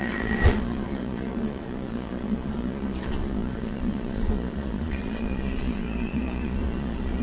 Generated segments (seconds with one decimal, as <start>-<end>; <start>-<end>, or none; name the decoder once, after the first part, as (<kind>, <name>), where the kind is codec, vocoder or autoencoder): 0.0-7.2 (vocoder, Vocos)